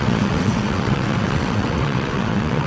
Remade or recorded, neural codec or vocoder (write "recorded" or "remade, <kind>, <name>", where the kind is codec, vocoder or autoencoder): remade, vocoder, WaveNeXt